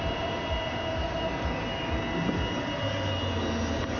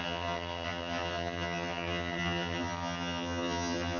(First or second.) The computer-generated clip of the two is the second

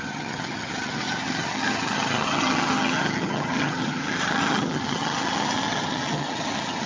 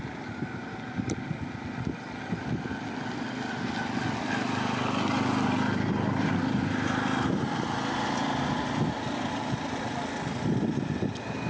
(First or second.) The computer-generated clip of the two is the first